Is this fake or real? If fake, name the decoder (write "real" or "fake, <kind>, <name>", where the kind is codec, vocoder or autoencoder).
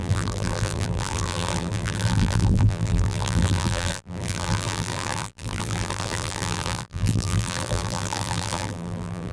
fake, vocoder, BigVGAN v2